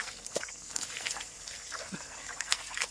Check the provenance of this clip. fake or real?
fake